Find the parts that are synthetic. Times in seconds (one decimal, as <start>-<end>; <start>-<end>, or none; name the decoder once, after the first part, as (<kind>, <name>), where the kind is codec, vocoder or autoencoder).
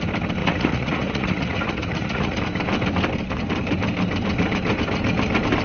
0.4-2.4 (vocoder, Vocos)